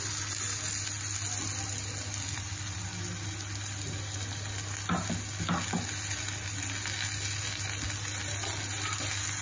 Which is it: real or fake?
real